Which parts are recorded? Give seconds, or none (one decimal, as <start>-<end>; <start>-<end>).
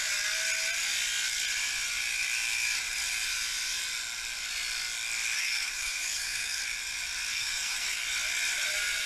0.0-5.4; 6.6-7.3; 8.0-9.1